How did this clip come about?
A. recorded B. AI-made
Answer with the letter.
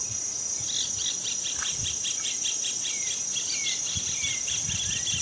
A